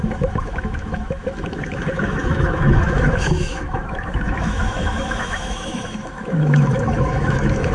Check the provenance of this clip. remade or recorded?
remade